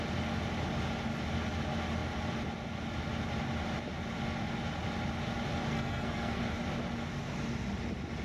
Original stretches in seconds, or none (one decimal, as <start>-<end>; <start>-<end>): 0.0-5.7; 6.4-8.2